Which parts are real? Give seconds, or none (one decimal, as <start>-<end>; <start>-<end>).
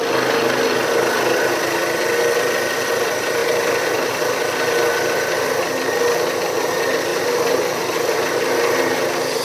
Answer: 0.0-3.4; 4.1-7.1; 7.8-9.4